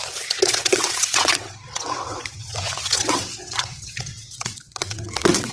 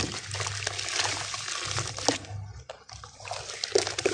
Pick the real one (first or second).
second